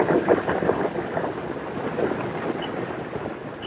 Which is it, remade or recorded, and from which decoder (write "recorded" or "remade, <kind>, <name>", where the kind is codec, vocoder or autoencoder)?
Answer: recorded